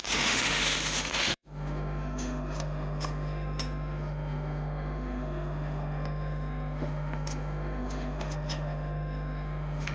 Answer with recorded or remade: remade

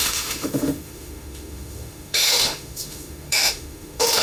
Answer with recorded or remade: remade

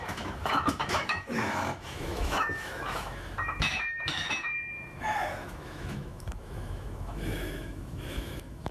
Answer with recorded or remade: remade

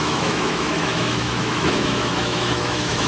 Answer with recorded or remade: remade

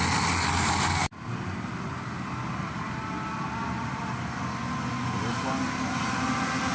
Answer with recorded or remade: recorded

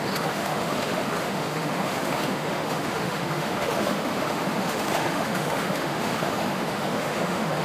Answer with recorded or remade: remade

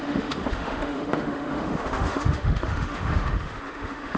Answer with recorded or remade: remade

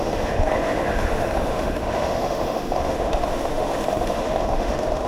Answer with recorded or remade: remade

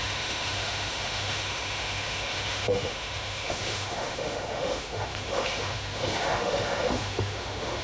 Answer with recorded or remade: remade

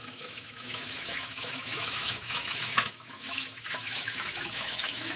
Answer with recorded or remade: remade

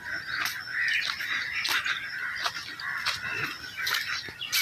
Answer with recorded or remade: recorded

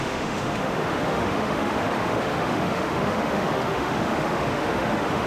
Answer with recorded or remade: remade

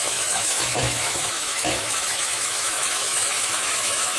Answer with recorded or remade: remade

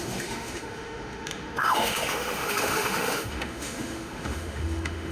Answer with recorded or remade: remade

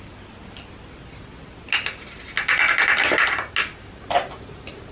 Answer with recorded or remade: recorded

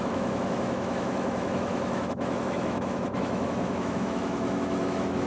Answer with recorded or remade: remade